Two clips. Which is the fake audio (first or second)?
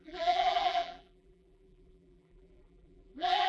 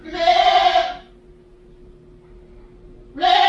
first